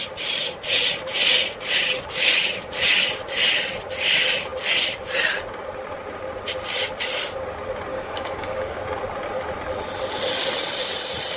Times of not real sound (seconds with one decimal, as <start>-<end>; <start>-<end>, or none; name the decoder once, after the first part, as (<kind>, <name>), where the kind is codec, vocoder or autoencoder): 7.9-8.8 (codec, DAC)